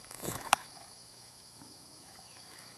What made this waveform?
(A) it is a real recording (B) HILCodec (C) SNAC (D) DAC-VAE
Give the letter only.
D